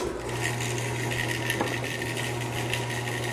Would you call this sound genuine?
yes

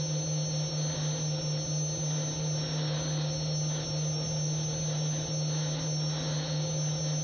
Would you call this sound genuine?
yes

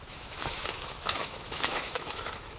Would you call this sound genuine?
no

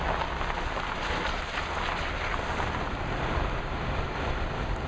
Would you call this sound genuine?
yes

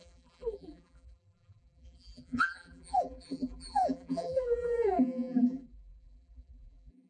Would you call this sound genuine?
no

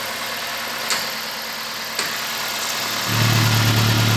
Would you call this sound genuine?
yes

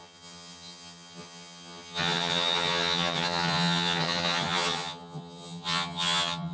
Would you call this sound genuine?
no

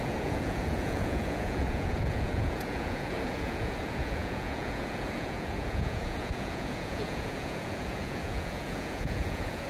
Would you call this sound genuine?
no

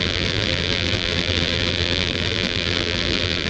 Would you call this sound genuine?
no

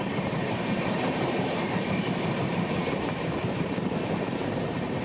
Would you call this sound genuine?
no